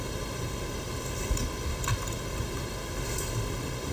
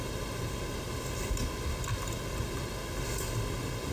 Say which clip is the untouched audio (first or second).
second